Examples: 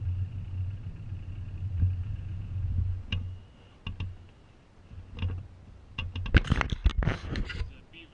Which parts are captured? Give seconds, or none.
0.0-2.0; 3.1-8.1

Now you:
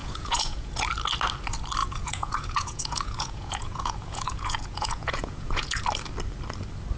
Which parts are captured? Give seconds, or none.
0.7-1.8; 5.8-7.0

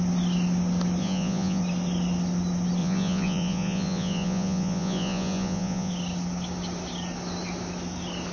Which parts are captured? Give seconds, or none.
0.0-1.0; 1.6-2.8; 5.9-8.3